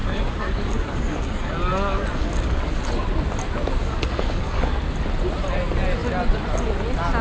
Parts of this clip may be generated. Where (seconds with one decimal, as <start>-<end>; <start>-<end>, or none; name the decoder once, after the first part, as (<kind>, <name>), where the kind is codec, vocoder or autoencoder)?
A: 0.0-2.8 (codec, DAC); 3.8-4.7